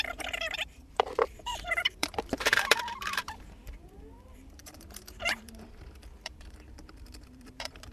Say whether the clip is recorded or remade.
remade